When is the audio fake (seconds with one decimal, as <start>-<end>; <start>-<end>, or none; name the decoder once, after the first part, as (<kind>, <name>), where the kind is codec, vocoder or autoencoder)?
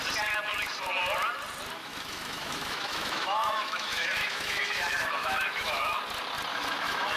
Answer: 1.8-6.0 (autoencoder, DAC-VAE); 6.5-7.2